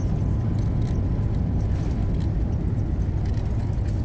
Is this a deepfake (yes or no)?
no